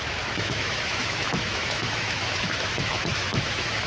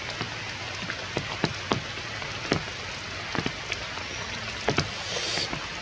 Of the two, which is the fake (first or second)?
first